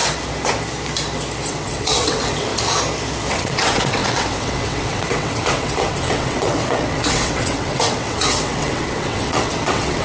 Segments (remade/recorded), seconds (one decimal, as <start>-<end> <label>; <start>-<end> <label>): 0.0-1.5 recorded; 1.5-2.5 remade; 2.5-3.3 recorded; 3.3-10.0 remade